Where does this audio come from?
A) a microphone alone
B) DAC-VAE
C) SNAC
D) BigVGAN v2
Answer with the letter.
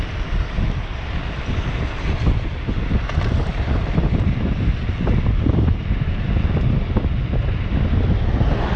A